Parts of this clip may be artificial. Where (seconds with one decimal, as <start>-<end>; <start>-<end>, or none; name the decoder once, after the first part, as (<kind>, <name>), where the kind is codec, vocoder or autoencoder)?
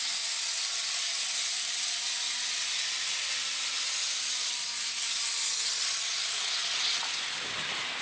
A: none